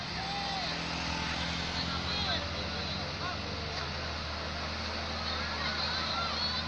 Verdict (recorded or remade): recorded